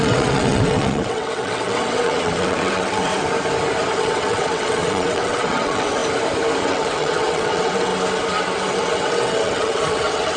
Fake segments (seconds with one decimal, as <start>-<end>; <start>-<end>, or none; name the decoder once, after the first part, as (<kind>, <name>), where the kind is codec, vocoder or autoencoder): 0.0-3.1 (vocoder, WaveNeXt); 4.0-6.0; 6.6-7.9; 8.7-10.4